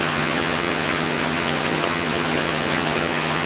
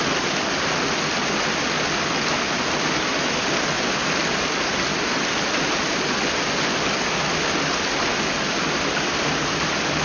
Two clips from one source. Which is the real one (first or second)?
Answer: second